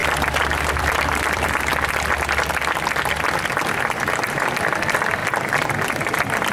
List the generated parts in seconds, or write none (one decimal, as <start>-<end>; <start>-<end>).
0.7-1.7; 3.6-5.2; 5.9-6.5